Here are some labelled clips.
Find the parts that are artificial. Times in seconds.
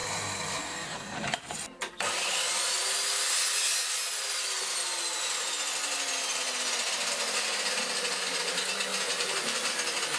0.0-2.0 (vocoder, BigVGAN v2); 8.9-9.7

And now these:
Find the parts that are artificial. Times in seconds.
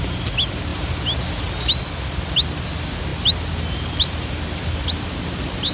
none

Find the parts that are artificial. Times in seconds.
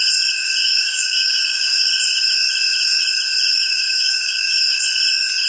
0.6-1.9 (codec, DAC); 3.5-4.8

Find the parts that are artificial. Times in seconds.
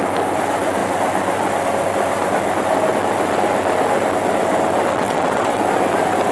4.9-5.6 (vocoder, WaveNeXt)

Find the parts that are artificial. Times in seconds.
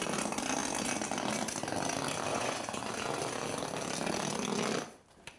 2.3-2.9 (vocoder, Vocos)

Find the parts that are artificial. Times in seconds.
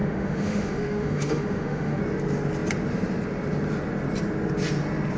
0.0-2.0 (autoencoder, DAC-VAE)